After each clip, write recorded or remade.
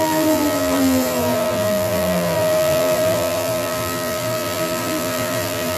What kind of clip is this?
remade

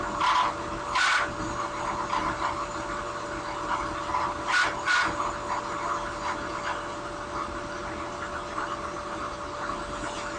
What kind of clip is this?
recorded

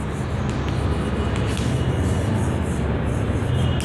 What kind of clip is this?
recorded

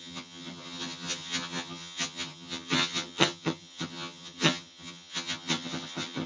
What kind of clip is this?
remade